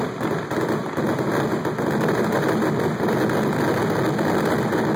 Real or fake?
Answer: real